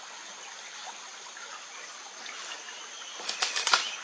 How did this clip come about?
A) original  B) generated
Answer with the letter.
A